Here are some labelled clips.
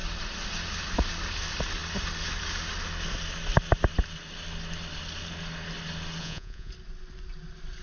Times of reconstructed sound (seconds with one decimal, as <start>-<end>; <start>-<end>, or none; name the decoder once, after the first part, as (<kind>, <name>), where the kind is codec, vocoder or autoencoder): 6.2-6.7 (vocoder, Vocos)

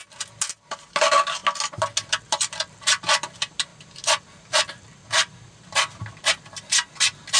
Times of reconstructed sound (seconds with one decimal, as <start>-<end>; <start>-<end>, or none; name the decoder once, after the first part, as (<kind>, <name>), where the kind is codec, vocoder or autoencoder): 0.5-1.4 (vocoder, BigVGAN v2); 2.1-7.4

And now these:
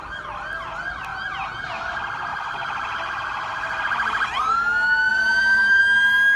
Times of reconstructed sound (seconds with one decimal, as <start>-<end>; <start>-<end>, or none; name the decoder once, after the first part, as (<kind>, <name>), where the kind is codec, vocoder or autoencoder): 2.3-4.5 (vocoder, BigVGAN v2); 5.1-5.8